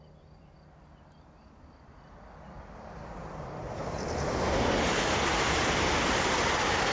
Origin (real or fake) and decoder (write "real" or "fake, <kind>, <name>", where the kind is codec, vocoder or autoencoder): real